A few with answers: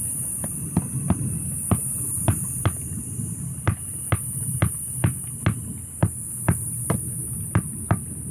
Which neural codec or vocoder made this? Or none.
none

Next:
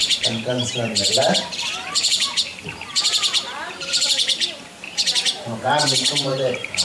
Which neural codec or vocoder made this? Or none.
vocoder, BigVGAN v2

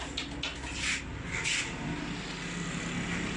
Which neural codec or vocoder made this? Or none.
none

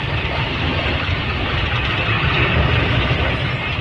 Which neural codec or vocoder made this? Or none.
none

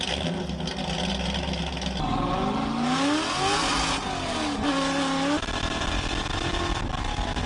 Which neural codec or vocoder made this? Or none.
none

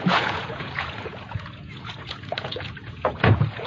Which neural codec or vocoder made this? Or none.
vocoder, Vocos